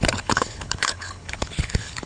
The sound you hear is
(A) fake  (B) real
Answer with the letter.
A